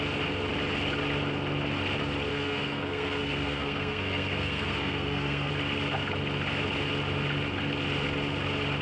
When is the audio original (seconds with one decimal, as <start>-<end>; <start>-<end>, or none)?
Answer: 0.0-2.3; 5.5-8.8